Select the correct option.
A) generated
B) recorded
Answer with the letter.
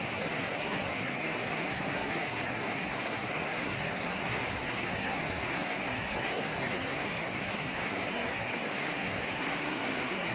A